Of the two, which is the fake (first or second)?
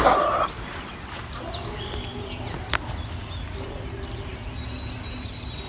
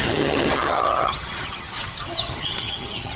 second